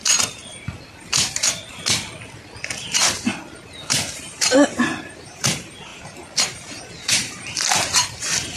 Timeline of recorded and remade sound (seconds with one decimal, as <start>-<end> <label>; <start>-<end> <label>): 0.0-0.4 remade; 0.4-2.8 recorded; 2.8-3.3 remade; 3.3-4.2 recorded; 4.2-8.6 remade